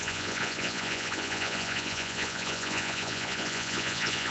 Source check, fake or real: fake